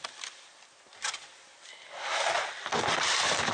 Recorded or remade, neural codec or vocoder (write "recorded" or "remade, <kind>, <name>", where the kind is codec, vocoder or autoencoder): recorded